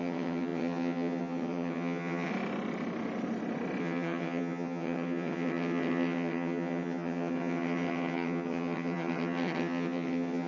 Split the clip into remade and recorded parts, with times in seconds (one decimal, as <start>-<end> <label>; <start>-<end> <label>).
0.0-2.3 remade; 2.3-3.8 recorded; 3.8-10.5 remade